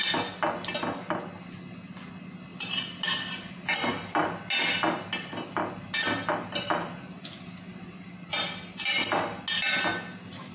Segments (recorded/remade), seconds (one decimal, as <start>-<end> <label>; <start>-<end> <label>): 0.0-2.5 recorded; 2.5-4.5 remade; 4.5-7.7 recorded; 7.7-8.9 remade; 8.9-10.5 recorded